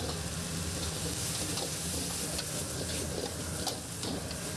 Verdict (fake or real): real